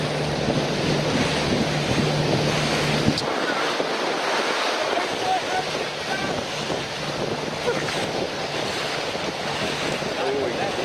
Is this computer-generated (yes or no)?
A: no